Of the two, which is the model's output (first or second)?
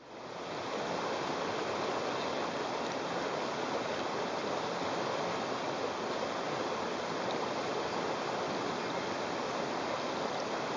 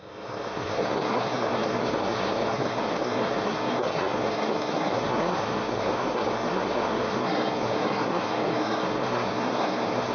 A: second